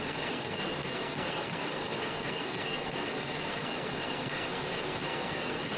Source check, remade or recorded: remade